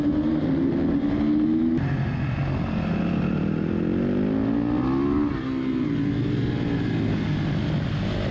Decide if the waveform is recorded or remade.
recorded